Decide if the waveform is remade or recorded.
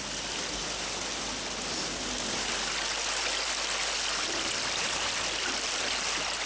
recorded